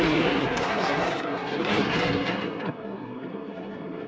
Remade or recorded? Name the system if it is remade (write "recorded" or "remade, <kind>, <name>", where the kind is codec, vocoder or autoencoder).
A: remade, codec, SNAC